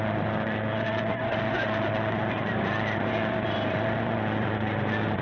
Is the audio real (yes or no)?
no